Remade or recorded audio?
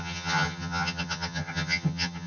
remade